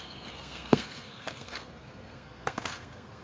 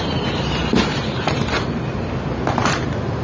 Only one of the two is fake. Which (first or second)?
first